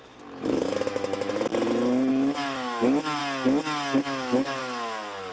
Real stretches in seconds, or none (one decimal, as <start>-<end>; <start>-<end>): 1.5-2.1; 3.2-4.0; 4.6-5.3